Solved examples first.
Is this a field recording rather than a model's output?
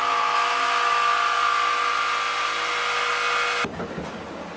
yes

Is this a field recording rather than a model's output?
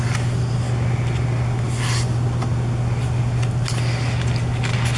yes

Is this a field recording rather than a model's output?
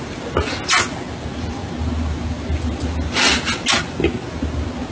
yes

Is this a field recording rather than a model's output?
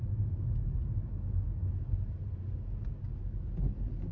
yes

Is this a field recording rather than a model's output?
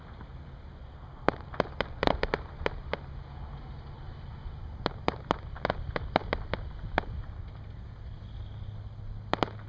yes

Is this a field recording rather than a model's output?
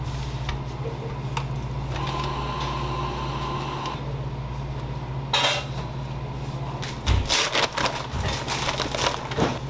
yes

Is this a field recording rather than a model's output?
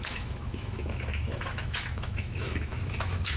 no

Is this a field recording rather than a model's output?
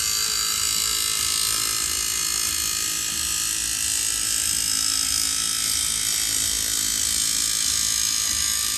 yes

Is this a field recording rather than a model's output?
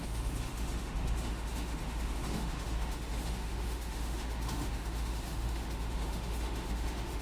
no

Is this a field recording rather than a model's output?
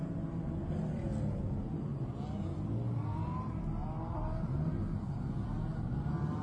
yes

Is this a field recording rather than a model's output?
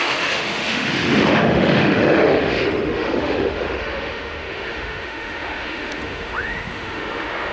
no